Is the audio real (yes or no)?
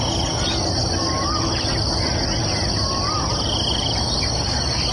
yes